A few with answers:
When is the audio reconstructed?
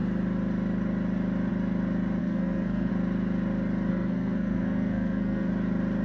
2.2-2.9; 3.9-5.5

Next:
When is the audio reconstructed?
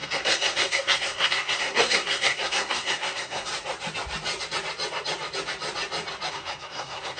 0.0-3.5; 6.3-7.2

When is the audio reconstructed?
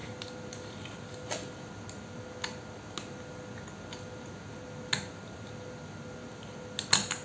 none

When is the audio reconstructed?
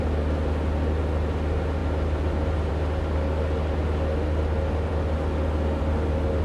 none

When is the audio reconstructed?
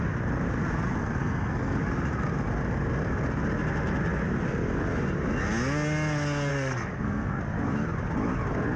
1.0-1.8; 6.5-7.4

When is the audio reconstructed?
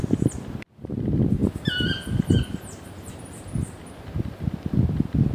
none